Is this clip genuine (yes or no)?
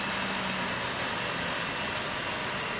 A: yes